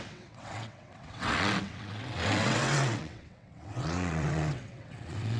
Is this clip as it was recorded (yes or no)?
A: no